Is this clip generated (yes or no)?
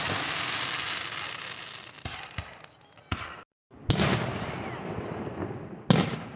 no